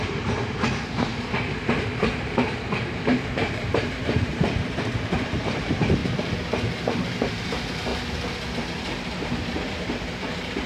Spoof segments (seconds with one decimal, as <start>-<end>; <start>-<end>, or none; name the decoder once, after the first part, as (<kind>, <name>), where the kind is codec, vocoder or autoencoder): 0.0-1.1 (vocoder, BigVGAN v2); 2.0-6.0; 7.3-7.9; 8.7-10.7